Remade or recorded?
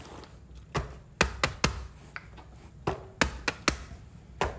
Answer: recorded